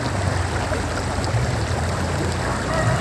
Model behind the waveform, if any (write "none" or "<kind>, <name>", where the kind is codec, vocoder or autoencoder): none